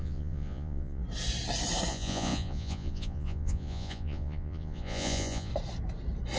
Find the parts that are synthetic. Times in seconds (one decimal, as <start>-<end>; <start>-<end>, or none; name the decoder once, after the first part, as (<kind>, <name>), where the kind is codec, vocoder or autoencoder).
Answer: 0.0-1.0 (vocoder, Vocos); 1.9-5.5